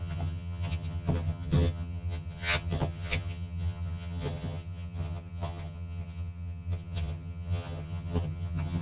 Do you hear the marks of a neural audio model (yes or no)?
yes